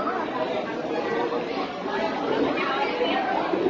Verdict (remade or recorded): recorded